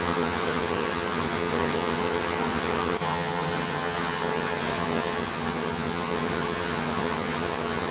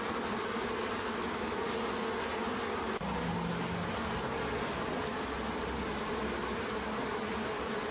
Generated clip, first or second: first